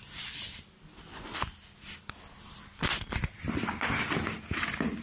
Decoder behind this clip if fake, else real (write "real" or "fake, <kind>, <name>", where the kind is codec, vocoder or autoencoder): real